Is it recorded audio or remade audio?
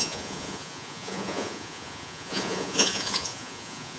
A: remade